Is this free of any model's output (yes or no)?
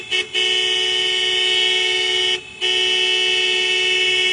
yes